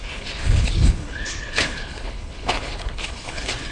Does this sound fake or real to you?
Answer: fake